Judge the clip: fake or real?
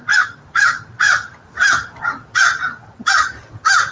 real